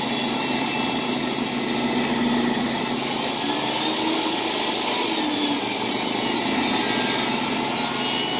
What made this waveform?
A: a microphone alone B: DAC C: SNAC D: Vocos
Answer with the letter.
A